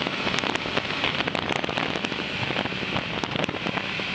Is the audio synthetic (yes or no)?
no